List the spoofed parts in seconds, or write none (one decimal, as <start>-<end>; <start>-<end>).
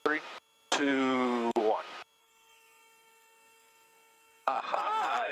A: 0.8-1.6; 2.2-5.3